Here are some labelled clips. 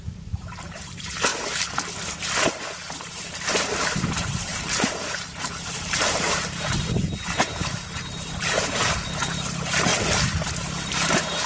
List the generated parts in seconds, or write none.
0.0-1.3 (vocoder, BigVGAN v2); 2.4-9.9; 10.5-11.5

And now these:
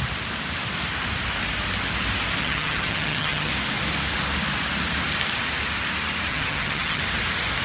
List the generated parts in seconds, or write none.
2.4-3.5 (vocoder, HiFi-GAN); 6.3-7.0

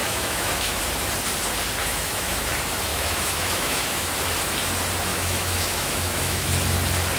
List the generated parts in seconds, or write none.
0.0-0.8 (autoencoder, DAC-VAE); 1.8-2.5; 2.9-4.1; 5.1-6.5

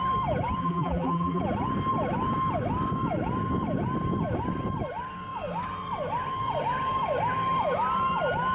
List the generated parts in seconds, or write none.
0.6-1.4 (vocoder, BigVGAN v2)

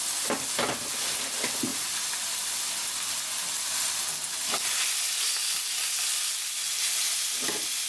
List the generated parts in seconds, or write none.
none

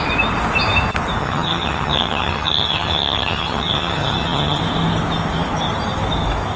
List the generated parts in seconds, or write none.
1.2-4.6 (vocoder, HiFi-GAN)

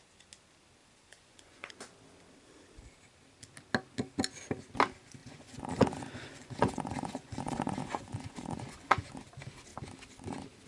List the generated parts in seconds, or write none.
0.8-1.7 (vocoder, Vocos); 5.2-9.1